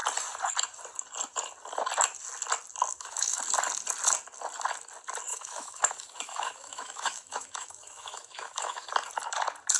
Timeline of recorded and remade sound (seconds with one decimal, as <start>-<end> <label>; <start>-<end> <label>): 0.0-2.9 recorded; 2.9-3.4 remade; 3.4-5.3 recorded; 5.3-8.9 remade; 8.9-9.8 recorded